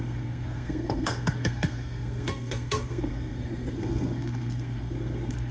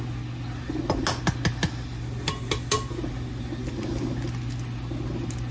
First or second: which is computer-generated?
first